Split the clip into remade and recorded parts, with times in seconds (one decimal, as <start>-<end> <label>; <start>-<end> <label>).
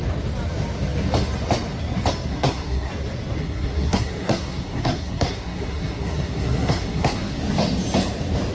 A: 0.0-2.3 recorded; 2.3-2.9 remade; 2.9-3.4 recorded; 3.4-7.4 remade; 7.4-8.5 recorded